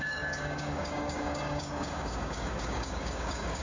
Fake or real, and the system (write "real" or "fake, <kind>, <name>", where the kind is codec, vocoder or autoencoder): fake, codec, DAC